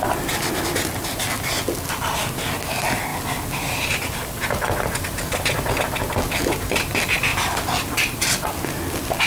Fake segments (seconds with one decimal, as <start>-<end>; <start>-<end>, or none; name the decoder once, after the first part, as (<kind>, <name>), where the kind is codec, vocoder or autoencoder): 3.1-5.7 (vocoder, BigVGAN v2); 7.3-8.6